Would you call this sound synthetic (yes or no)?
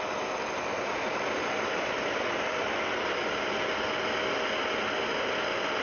no